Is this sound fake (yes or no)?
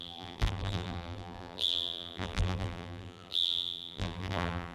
yes